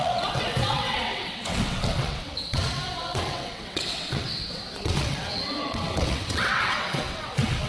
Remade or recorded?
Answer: remade